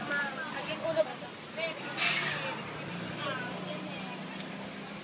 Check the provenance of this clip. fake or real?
real